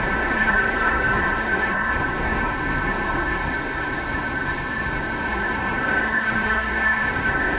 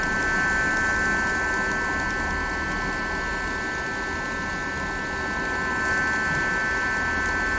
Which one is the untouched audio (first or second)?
second